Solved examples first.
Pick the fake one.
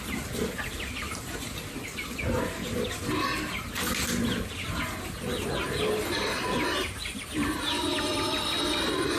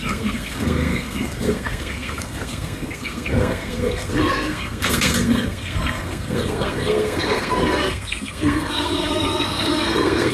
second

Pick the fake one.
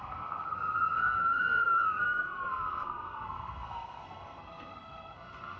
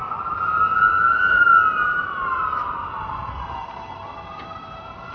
first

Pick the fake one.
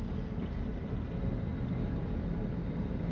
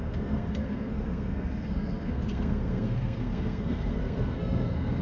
second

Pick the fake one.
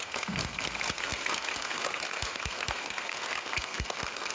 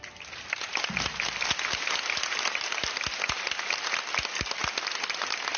first